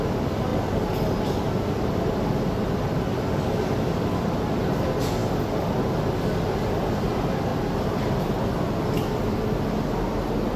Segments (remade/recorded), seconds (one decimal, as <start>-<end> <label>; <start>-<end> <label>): 0.0-10.6 recorded